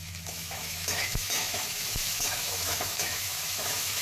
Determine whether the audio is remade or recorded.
remade